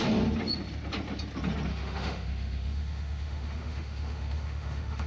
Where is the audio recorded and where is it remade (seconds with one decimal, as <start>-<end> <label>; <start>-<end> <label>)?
0.0-1.7 recorded; 1.7-5.1 remade